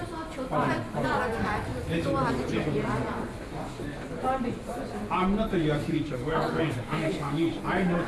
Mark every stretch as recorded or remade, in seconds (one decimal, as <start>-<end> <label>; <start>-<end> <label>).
0.0-5.9 recorded; 5.9-7.6 remade; 7.6-8.1 recorded